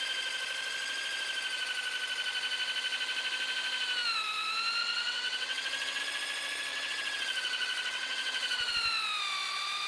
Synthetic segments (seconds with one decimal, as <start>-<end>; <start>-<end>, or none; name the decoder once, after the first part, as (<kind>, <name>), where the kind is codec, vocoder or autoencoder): 4.8-6.0 (vocoder, WaveNeXt); 6.7-8.7